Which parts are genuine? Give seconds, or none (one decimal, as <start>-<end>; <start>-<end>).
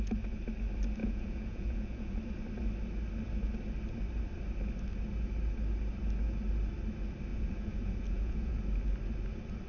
0.0-1.0; 2.2-7.3; 8.6-9.7